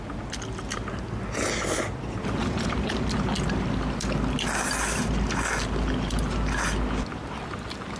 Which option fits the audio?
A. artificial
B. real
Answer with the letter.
B